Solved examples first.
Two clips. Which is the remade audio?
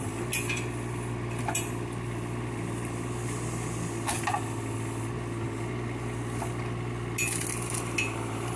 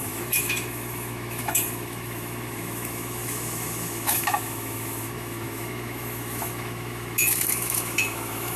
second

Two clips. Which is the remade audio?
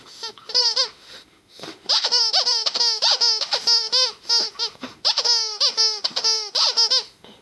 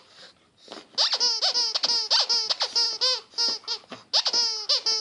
first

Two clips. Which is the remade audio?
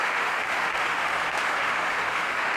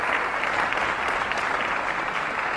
first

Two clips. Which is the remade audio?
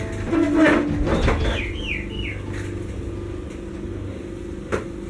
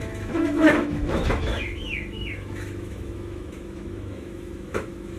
second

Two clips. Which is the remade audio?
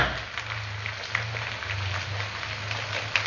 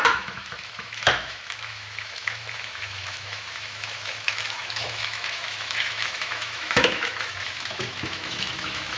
second